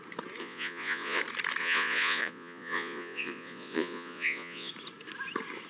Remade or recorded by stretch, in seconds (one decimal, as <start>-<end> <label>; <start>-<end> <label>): 0.0-0.4 recorded; 0.4-1.2 remade; 1.2-1.6 recorded; 1.6-4.7 remade; 4.7-5.7 recorded